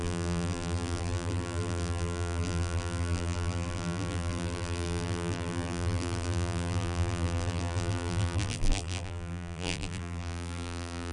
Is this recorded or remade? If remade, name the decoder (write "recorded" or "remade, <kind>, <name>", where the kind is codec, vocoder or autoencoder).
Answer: remade, vocoder, BigVGAN v2